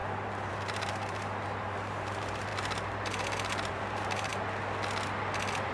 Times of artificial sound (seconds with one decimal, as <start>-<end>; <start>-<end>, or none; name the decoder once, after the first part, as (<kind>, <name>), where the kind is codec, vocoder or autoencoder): 0.0-2.5 (vocoder, BigVGAN v2); 3.7-4.3